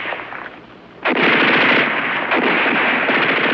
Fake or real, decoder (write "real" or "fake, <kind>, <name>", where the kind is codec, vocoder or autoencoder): real